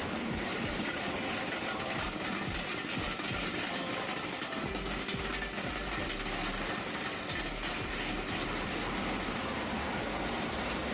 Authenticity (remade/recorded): recorded